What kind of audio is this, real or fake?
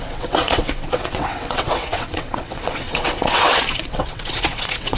fake